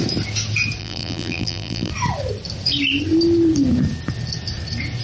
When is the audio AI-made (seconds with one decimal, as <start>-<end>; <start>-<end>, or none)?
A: 0.8-1.9